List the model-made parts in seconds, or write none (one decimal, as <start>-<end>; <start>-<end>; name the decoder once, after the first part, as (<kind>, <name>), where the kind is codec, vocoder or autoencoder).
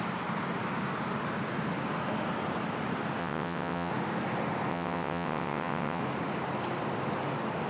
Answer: 3.2-3.9 (vocoder, WaveNeXt); 4.7-6.0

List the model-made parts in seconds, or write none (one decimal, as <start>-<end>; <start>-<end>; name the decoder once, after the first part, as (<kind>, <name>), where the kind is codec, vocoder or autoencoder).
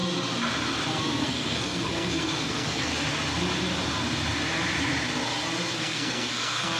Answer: 0.9-2.9 (codec, SNAC); 5.7-6.8